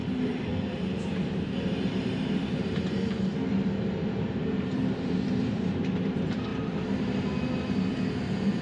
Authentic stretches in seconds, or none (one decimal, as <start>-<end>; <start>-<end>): 3.3-4.2